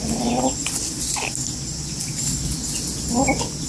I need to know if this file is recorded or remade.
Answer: recorded